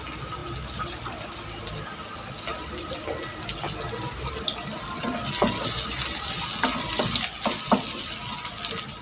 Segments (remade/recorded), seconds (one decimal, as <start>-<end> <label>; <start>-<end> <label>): 0.0-9.0 recorded